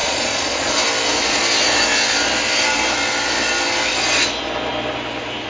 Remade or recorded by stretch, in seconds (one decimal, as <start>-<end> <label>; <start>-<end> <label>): 0.0-0.7 remade; 0.7-5.5 recorded